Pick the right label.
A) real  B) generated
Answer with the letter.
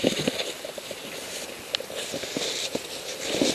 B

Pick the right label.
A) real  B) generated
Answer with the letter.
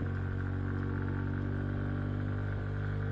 A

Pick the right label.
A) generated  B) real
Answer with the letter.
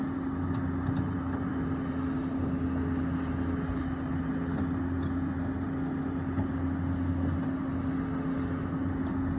B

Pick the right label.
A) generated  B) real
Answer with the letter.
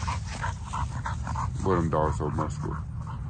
B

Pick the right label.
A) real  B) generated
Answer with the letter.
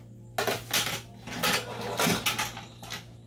A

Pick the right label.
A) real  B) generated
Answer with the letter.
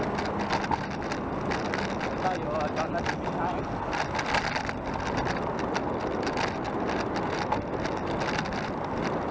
A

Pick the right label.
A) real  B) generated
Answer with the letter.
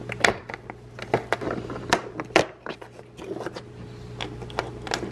A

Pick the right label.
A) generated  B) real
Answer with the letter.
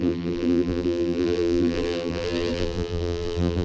A